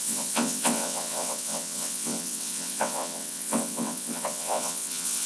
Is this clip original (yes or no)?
no